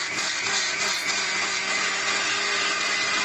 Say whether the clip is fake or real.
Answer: real